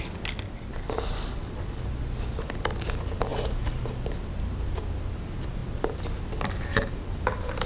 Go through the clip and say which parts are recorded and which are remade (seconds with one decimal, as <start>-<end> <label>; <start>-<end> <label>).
0.0-3.3 recorded; 3.3-3.8 remade; 3.8-6.7 recorded; 6.7-7.7 remade